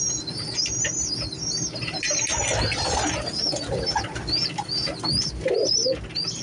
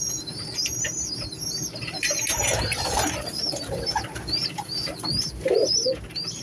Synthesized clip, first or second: second